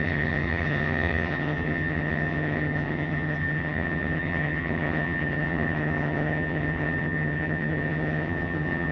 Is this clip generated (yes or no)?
yes